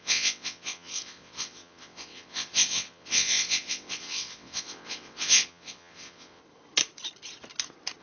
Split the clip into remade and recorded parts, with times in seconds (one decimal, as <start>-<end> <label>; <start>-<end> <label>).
0.0-6.4 remade; 6.4-8.0 recorded